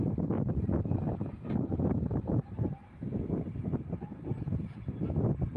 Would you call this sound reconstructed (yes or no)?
no